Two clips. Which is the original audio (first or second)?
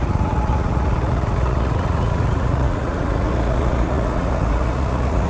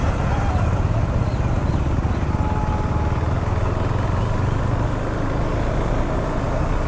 second